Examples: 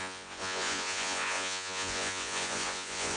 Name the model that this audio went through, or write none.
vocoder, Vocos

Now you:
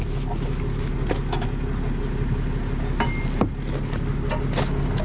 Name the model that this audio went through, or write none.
none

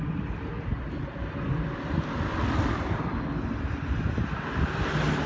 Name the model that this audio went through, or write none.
none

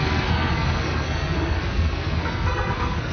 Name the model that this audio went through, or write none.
codec, SNAC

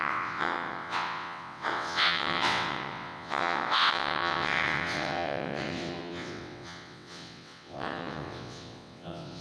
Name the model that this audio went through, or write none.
vocoder, WaveNeXt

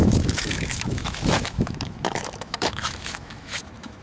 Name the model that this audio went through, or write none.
autoencoder, DAC-VAE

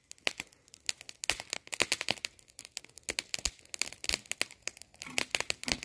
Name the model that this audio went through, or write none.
none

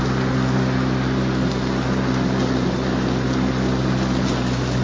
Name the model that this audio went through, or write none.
none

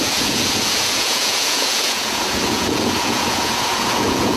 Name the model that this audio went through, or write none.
vocoder, Vocos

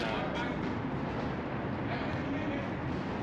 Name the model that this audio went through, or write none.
none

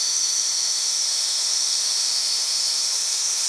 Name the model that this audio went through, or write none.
autoencoder, DAC-VAE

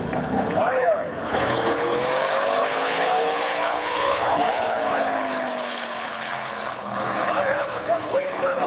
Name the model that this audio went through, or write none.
codec, HILCodec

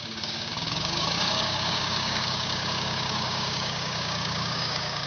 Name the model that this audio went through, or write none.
codec, DAC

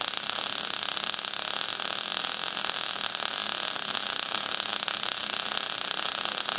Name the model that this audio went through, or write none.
none